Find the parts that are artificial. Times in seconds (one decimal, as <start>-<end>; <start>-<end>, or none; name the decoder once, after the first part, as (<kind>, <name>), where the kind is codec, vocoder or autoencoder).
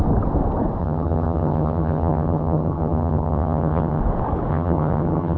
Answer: 0.8-4.0 (vocoder, HiFi-GAN); 4.5-5.4